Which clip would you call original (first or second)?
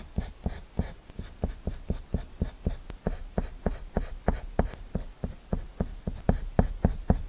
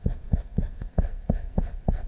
first